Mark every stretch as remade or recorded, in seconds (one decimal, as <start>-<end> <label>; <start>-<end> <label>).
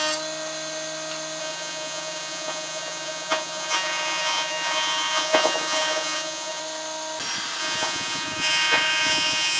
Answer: 0.0-1.4 recorded; 1.4-6.6 remade; 6.6-7.6 recorded; 7.6-9.6 remade